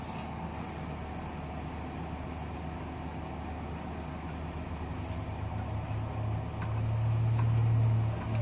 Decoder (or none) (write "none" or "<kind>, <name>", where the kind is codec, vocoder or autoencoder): none